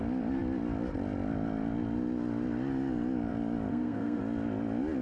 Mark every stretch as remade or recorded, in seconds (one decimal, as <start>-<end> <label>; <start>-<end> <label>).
0.0-3.7 recorded; 3.7-4.2 remade; 4.2-5.0 recorded